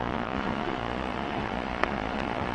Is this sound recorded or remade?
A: remade